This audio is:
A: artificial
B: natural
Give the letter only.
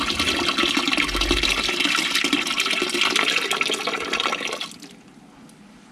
B